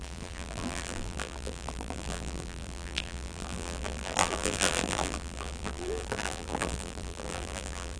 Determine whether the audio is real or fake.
fake